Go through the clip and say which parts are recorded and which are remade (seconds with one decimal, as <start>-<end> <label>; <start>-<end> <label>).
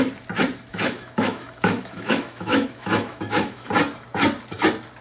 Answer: 0.0-0.7 recorded; 0.7-3.7 remade; 3.7-5.0 recorded